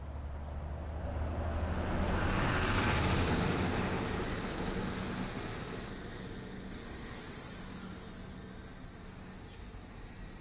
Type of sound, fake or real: real